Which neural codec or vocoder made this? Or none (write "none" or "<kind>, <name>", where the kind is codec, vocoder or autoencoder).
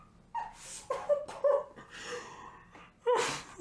none